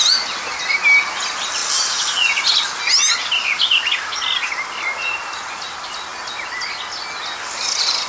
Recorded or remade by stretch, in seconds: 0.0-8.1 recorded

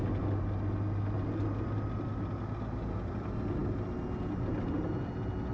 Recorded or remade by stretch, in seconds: 0.0-5.5 recorded